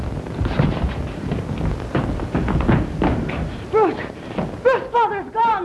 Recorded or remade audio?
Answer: recorded